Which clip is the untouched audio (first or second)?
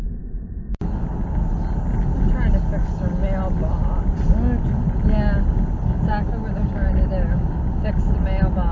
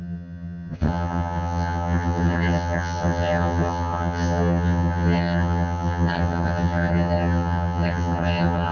first